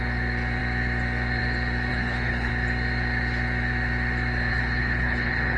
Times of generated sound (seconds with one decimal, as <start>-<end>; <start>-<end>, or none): 1.9-2.5; 4.5-5.6